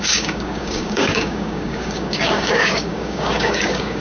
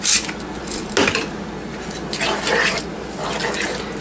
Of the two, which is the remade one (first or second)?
first